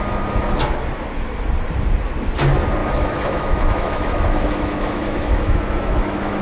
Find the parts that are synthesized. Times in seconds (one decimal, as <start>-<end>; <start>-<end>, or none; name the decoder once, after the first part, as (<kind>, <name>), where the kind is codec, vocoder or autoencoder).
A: 2.8-6.4 (autoencoder, DAC-VAE)